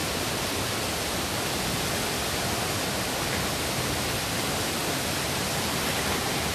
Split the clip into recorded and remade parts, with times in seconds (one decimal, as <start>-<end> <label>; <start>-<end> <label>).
0.0-6.5 remade